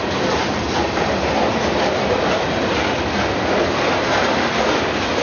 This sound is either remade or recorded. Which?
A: recorded